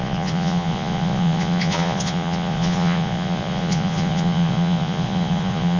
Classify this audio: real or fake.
fake